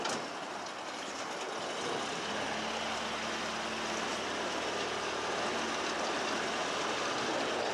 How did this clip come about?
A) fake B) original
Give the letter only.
B